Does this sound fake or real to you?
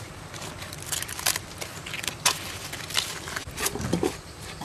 fake